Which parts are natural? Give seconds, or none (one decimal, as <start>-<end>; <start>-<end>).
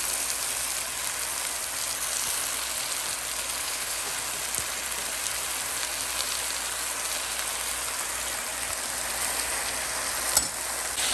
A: 0.0-3.6; 4.1-11.1